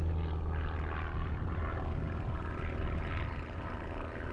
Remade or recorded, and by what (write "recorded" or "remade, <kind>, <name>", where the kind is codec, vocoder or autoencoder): recorded